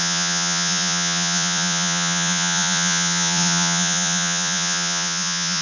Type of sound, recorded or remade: remade